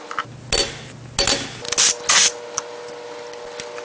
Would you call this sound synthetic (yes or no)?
no